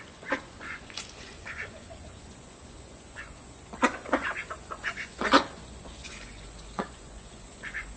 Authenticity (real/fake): fake